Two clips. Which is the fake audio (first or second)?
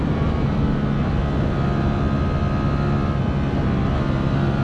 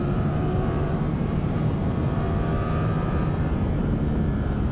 second